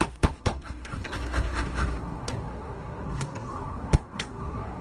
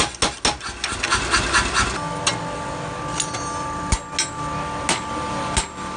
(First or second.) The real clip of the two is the second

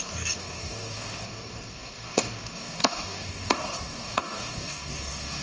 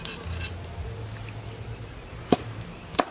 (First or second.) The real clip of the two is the second